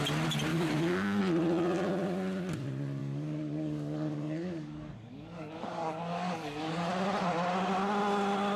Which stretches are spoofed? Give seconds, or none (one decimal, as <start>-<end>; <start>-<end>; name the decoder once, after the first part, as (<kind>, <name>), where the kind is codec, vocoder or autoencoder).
0.5-1.2 (codec, DAC); 3.0-6.9

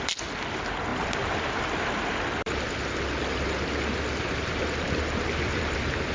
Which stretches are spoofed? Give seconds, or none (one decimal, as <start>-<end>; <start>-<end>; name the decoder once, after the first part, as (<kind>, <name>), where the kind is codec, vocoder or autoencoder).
none

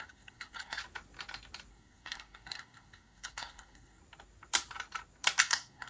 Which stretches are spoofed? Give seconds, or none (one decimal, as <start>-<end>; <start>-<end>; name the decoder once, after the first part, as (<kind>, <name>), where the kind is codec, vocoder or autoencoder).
0.0-0.8 (codec, SNAC); 1.7-4.0; 5.4-5.9